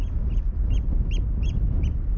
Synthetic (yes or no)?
no